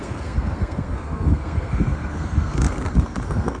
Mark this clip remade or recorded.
remade